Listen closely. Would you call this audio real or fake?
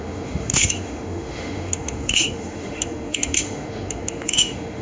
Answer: fake